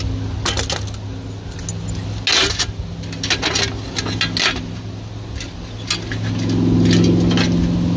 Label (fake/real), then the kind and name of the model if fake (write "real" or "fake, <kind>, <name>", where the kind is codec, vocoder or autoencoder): real